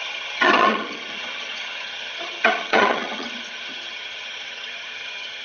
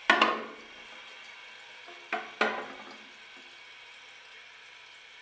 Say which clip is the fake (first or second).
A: first